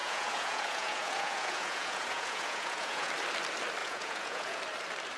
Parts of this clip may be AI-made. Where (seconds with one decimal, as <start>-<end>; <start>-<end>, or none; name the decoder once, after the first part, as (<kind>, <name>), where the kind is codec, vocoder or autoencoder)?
0.0-3.1 (vocoder, Vocos); 3.8-4.6